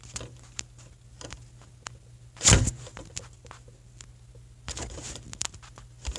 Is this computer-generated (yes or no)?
no